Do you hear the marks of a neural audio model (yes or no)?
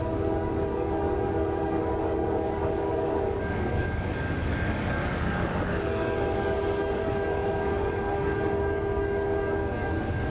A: yes